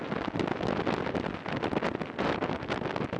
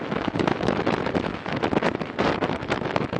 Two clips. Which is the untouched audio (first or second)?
first